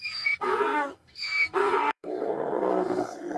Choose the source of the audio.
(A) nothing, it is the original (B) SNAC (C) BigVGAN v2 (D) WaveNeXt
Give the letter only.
B